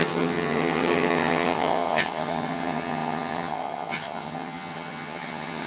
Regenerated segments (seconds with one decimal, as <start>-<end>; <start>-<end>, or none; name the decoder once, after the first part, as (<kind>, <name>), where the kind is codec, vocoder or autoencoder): 0.0-5.7 (vocoder, HiFi-GAN)